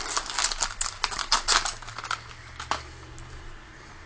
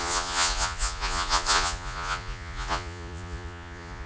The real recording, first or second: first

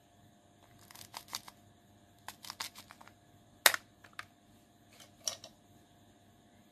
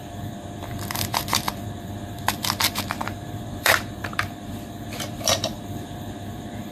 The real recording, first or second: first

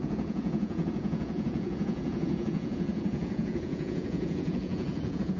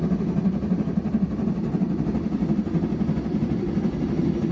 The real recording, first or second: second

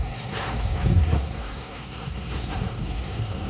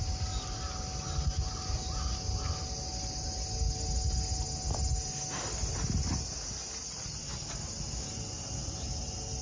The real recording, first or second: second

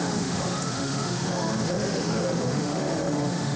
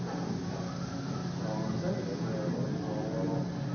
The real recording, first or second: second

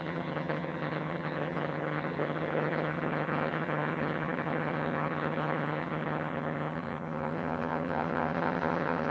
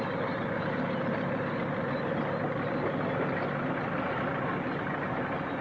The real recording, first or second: second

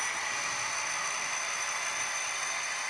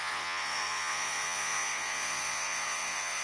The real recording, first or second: first